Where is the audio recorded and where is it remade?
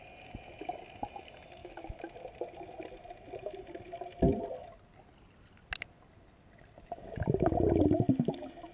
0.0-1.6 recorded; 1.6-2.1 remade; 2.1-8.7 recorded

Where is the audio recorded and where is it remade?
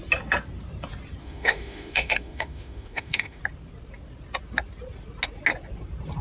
0.0-1.2 recorded; 1.2-3.4 remade; 3.4-6.2 recorded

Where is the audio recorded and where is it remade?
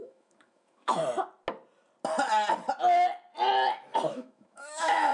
0.0-1.0 remade; 1.0-4.1 recorded; 4.1-5.1 remade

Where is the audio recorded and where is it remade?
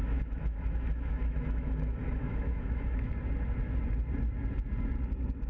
0.0-3.1 remade; 3.1-5.5 recorded